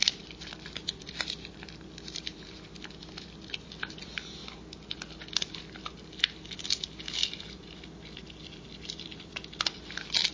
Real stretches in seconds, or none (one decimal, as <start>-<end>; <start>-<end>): 4.4-7.3